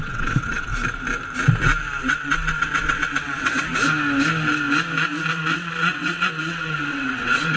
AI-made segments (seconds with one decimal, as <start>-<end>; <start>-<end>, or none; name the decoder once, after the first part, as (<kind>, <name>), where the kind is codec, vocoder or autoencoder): 0.0-0.7 (vocoder, WaveNeXt); 2.0-3.7; 5.3-7.6